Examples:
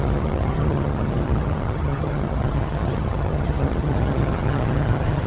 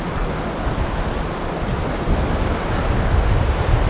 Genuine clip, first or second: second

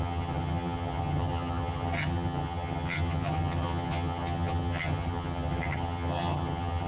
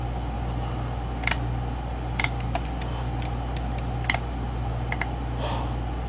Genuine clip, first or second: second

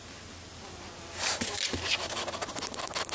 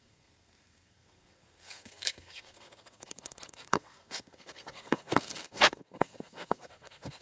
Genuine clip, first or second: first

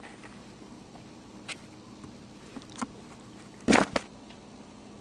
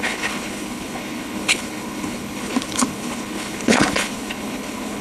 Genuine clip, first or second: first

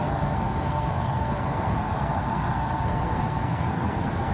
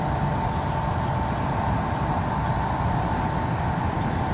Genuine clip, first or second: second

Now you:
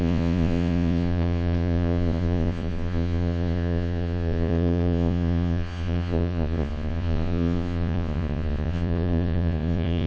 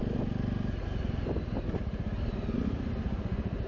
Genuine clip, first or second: second